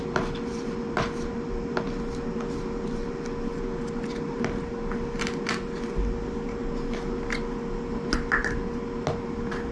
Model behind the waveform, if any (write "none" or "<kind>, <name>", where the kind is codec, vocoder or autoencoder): none